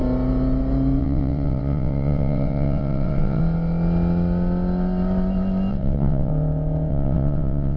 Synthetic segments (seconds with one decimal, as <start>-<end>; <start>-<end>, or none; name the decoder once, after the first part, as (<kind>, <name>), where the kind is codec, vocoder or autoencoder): 1.0-3.4 (vocoder, WaveNeXt); 5.7-6.3; 6.9-7.8